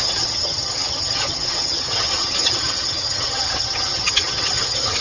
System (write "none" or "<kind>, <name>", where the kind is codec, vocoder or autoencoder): vocoder, HiFi-GAN